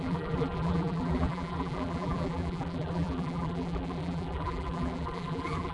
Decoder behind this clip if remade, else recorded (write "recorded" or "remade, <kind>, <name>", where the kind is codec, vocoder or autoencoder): remade, vocoder, BigVGAN v2